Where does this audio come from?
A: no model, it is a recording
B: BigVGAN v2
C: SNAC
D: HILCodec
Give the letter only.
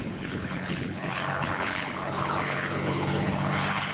D